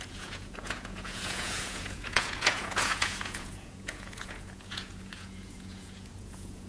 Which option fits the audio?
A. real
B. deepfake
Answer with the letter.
B